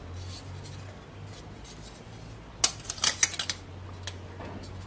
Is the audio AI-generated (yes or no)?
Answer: no